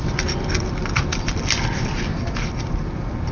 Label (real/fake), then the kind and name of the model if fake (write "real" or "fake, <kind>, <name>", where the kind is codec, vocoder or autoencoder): real